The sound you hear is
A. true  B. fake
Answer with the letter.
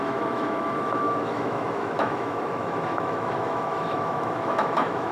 B